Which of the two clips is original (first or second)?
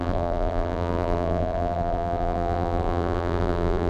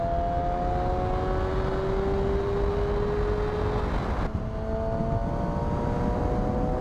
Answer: second